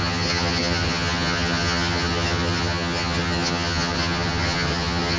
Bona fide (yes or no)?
no